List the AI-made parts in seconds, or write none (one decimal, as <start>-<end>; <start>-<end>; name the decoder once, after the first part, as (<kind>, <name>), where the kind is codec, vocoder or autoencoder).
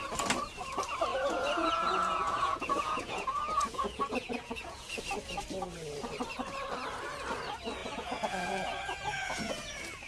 1.1-5.0 (vocoder, Vocos); 7.8-9.5